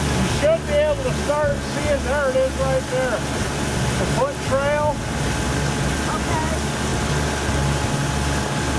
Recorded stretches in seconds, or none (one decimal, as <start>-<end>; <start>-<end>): 0.0-8.8